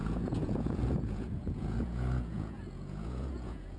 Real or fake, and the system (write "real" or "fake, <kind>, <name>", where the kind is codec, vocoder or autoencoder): fake, vocoder, Vocos